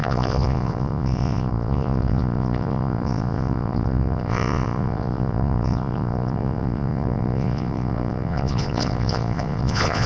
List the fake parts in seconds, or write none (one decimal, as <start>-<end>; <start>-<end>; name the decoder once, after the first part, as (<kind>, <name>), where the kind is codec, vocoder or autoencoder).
0.0-10.1 (vocoder, Vocos)